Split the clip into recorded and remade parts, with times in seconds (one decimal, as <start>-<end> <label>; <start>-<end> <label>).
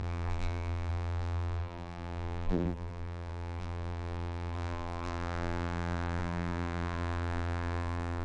0.0-8.2 remade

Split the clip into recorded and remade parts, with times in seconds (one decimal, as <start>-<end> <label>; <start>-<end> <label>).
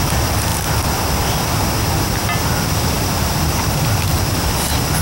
0.0-5.0 recorded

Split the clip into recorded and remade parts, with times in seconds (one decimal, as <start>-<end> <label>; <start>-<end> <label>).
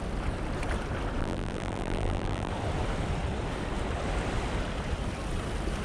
0.0-1.2 recorded; 1.2-2.5 remade; 2.5-5.8 recorded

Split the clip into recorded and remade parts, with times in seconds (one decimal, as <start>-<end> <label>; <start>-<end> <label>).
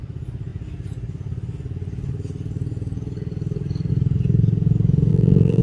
0.0-5.1 recorded; 5.1-5.6 remade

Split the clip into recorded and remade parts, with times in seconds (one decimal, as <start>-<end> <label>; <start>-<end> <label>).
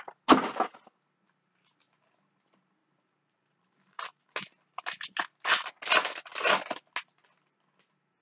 0.0-2.8 recorded; 2.8-4.3 remade; 4.3-8.2 recorded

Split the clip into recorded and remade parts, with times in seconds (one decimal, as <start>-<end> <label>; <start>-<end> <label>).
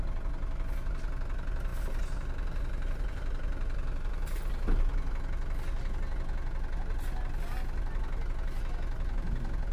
0.0-1.7 recorded; 1.7-4.4 remade; 4.4-9.7 recorded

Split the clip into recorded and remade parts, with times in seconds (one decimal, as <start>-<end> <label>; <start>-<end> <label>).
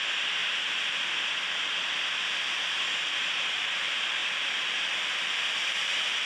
0.0-0.4 remade; 0.4-3.3 recorded; 3.3-6.3 remade